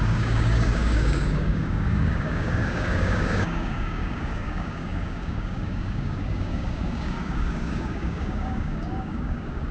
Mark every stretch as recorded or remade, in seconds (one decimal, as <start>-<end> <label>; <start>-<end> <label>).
0.0-9.7 remade